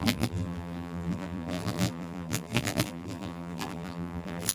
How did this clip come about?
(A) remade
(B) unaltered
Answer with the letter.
A